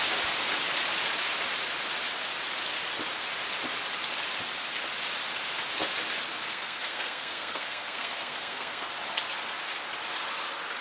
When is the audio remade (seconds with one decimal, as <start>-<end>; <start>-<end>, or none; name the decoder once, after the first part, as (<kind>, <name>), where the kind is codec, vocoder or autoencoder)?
6.4-8.9 (codec, SNAC)